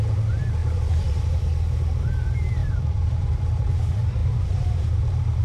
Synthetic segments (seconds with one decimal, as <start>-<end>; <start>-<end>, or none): 0.6-1.4; 2.6-3.7; 4.2-5.4